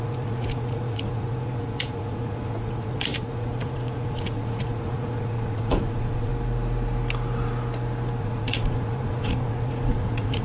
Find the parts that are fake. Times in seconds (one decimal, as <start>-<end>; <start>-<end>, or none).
0.0-6.3; 8.2-10.4